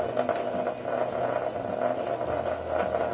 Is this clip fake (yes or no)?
no